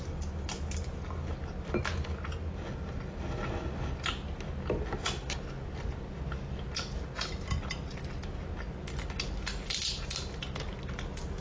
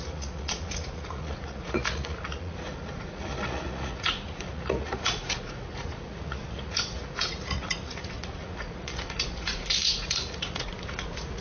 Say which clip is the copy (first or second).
second